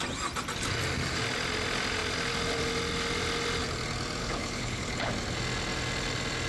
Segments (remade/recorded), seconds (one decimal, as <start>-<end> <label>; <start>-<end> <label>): 0.0-4.2 recorded; 4.2-5.1 remade; 5.1-6.5 recorded